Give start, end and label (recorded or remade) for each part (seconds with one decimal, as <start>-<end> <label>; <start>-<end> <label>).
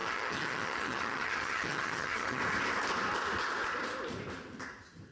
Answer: 0.0-2.4 remade; 2.4-5.1 recorded